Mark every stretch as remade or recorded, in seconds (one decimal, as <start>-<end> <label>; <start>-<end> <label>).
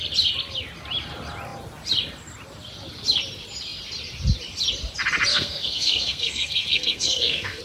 0.0-5.3 recorded; 5.3-7.6 remade